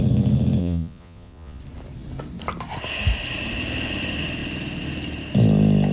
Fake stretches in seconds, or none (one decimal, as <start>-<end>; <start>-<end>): 0.6-1.6